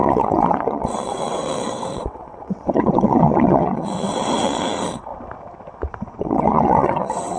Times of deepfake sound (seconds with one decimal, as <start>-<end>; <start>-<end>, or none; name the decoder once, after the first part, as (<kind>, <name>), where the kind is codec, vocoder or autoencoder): 0.0-5.1 (vocoder, WaveNeXt); 6.2-7.4